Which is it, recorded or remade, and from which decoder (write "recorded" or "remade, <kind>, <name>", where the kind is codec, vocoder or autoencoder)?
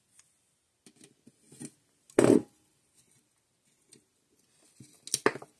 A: recorded